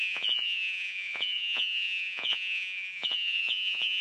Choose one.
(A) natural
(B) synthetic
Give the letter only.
B